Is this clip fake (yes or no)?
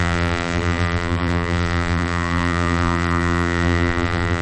yes